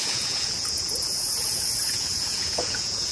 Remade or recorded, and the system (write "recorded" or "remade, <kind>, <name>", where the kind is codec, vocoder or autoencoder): remade, vocoder, Vocos